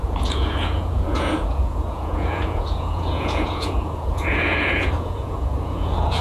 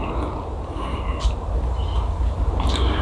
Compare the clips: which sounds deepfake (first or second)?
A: first